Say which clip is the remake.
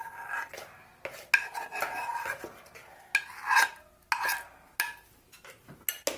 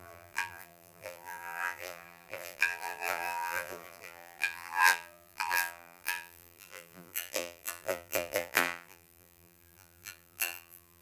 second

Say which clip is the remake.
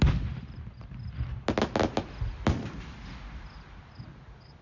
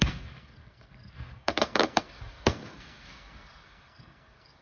second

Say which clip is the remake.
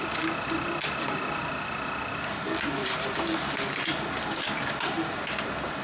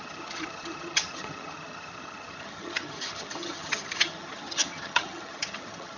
second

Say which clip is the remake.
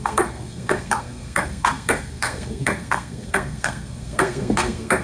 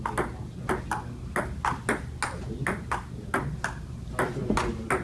first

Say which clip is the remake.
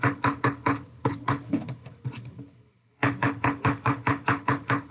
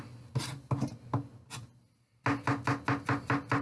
first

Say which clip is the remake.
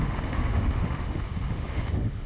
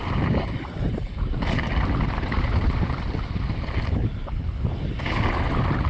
first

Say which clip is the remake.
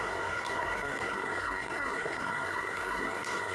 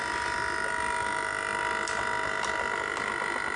first